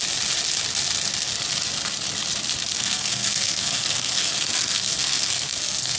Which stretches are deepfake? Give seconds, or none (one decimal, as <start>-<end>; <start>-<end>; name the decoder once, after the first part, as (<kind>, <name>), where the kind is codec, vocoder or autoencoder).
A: 2.7-6.0 (codec, SNAC)

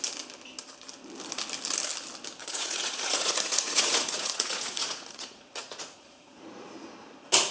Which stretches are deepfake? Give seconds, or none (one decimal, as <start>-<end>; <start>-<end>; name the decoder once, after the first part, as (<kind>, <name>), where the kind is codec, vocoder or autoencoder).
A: 2.4-6.4 (vocoder, Vocos)